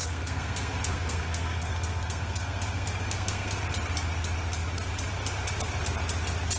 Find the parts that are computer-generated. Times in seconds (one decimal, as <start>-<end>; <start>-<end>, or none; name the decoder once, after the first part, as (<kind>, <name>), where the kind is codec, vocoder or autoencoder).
0.0-3.6 (codec, SNAC)